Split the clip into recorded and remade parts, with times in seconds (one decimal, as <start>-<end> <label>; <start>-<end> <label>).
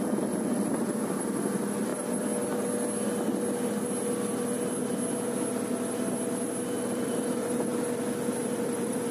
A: 0.0-1.9 remade; 1.9-6.8 recorded; 6.8-7.7 remade; 7.7-8.6 recorded; 8.6-9.1 remade